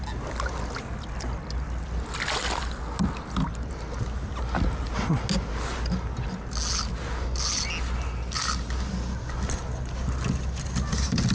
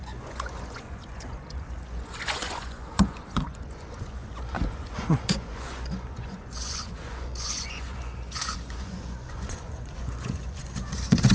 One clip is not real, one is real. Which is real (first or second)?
first